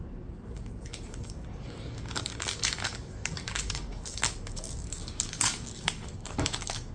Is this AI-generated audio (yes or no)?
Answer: yes